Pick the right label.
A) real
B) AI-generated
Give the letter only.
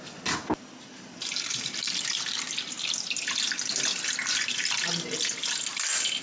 A